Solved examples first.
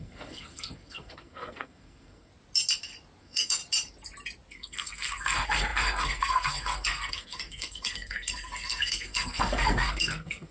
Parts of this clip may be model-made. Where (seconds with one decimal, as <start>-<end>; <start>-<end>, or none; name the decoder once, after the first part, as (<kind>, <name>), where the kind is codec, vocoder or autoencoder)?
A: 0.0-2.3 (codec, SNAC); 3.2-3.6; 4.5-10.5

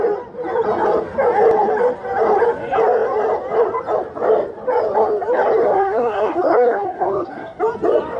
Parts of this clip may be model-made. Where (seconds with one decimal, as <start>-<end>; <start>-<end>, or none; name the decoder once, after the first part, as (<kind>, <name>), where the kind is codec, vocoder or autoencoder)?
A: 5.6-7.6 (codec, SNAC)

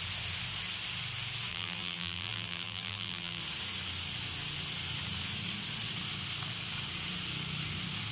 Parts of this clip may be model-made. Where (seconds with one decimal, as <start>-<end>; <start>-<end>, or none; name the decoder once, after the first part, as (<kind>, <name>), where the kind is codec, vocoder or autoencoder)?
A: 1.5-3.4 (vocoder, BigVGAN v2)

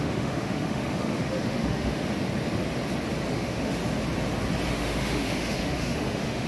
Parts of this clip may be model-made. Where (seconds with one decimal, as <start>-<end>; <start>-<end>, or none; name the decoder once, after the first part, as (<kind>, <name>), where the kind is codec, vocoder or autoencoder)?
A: 0.0-2.1 (autoencoder, DAC-VAE); 3.3-3.8; 4.7-6.5

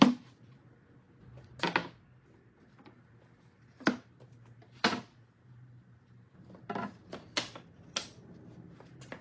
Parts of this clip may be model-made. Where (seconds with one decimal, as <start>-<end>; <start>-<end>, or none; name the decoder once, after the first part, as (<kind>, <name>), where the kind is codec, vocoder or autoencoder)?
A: none